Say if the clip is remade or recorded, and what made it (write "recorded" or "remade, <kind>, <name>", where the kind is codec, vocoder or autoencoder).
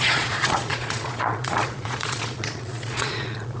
remade, vocoder, Vocos